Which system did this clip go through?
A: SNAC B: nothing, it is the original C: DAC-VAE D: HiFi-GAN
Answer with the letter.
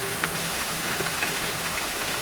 C